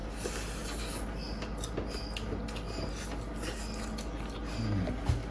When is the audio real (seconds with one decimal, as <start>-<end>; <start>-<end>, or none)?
0.0-5.3